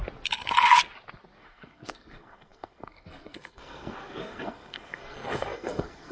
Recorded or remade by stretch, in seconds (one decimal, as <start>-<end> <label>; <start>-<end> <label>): 0.0-1.4 recorded; 1.4-6.1 remade